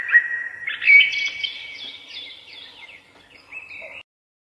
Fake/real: real